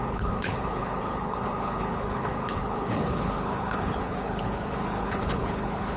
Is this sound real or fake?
fake